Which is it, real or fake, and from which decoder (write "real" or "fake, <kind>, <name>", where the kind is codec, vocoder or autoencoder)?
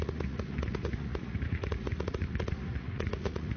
fake, vocoder, Vocos